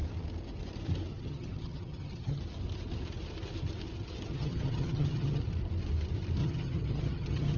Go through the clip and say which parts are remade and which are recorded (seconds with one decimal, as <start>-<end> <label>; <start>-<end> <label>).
0.0-1.1 recorded; 1.1-2.4 remade; 2.4-4.3 recorded; 4.3-5.4 remade; 5.4-6.4 recorded; 6.4-7.6 remade